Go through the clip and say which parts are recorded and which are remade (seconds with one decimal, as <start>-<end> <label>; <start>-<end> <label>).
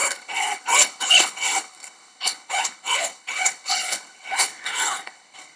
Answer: 0.0-5.6 remade